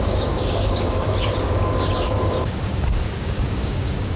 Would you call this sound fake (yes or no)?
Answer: yes